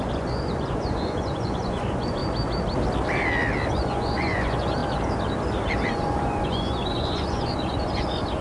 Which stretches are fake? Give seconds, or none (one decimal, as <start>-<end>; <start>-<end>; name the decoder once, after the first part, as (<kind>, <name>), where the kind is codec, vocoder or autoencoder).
0.0-2.2 (vocoder, Vocos); 3.7-4.8; 5.9-8.4